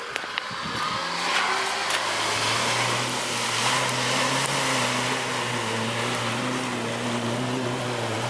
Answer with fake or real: real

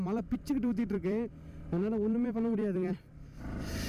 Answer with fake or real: fake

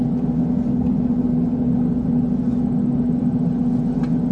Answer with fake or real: real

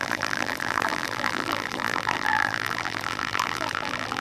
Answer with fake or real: fake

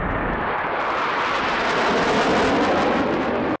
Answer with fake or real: real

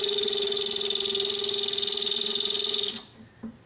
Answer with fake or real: real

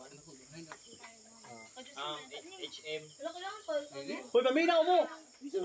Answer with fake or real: real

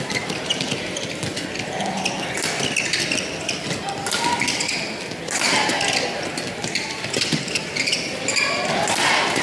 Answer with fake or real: real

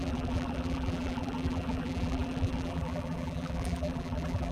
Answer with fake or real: fake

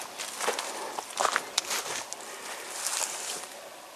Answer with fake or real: real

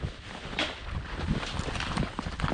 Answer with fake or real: real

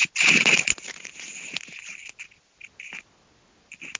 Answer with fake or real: real